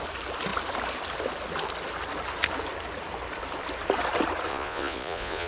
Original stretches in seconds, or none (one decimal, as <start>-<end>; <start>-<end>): 0.0-4.5